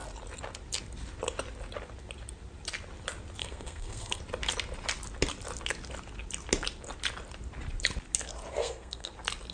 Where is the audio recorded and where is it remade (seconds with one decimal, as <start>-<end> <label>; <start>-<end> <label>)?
0.0-3.4 recorded; 3.4-4.2 remade; 4.2-8.5 recorded; 8.5-9.1 remade; 9.1-9.5 recorded